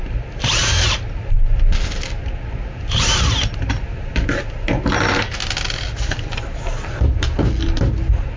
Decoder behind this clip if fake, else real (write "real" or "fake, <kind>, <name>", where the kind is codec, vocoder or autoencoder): real